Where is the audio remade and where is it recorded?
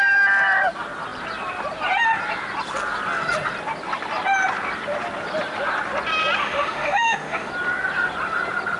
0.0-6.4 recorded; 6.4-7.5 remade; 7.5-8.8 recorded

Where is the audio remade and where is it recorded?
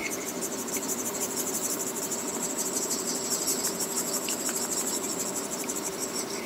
0.0-0.7 recorded; 0.7-6.5 remade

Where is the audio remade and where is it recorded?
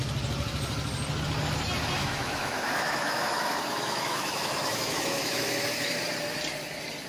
0.0-2.0 recorded; 2.0-6.0 remade; 6.0-7.1 recorded